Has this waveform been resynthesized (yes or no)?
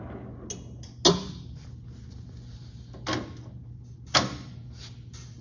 no